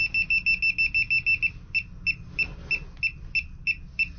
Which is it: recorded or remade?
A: recorded